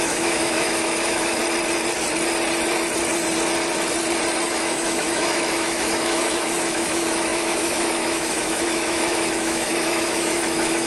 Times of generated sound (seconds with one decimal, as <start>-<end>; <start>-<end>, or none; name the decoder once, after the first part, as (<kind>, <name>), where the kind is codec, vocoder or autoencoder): 0.0-1.4 (autoencoder, DAC-VAE); 4.5-10.9

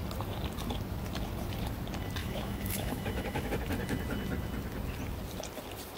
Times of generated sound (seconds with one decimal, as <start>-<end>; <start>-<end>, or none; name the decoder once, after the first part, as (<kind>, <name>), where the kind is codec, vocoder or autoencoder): 2.2-3.5 (autoencoder, DAC-VAE)

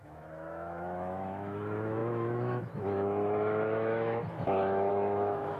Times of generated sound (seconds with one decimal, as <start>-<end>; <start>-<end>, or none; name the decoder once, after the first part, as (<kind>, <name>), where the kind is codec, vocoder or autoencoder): 0.0-5.6 (autoencoder, DAC-VAE)

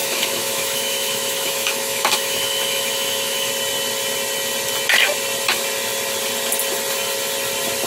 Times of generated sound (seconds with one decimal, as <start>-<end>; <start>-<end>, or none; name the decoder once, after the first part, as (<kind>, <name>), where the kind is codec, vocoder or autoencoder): 0.0-3.5 (autoencoder, DAC-VAE)

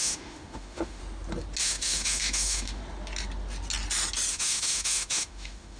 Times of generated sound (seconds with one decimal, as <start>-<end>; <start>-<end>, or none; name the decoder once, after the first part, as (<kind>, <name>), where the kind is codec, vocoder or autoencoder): 0.0-1.0 (autoencoder, DAC-VAE); 1.6-2.8; 4.3-5.8

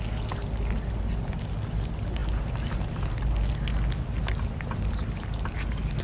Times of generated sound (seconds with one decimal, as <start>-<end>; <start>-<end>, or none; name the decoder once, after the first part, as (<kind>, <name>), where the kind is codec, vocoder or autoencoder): none